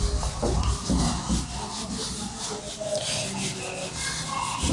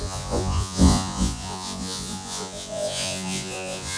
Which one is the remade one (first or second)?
second